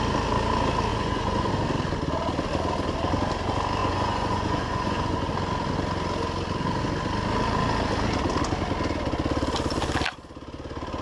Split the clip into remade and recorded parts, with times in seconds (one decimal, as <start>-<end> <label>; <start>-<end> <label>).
0.0-0.9 recorded; 0.9-1.5 remade; 1.5-3.8 recorded; 3.8-5.3 remade; 5.3-11.0 recorded